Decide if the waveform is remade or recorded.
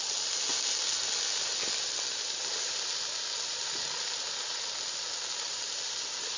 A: recorded